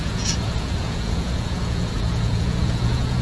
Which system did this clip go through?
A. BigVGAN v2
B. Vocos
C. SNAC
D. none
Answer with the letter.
B